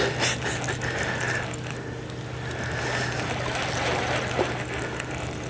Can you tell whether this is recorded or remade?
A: recorded